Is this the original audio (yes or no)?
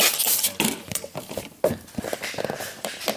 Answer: yes